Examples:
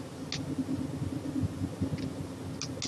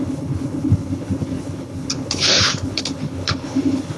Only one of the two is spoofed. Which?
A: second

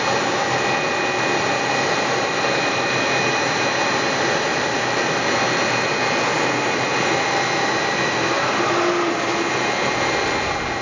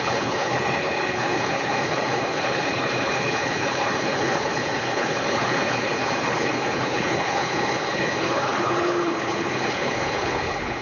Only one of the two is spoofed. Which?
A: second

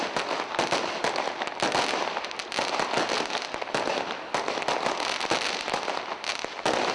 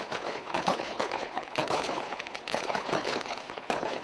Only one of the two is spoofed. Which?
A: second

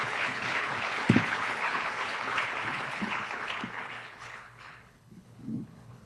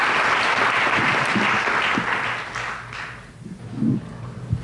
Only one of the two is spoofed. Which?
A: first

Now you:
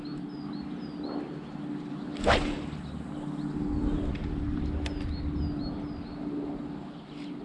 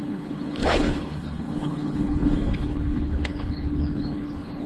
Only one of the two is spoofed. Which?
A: second